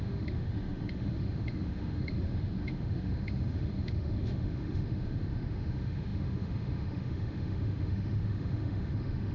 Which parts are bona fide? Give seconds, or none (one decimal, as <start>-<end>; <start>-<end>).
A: none